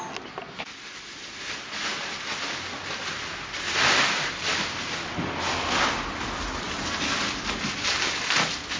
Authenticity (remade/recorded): recorded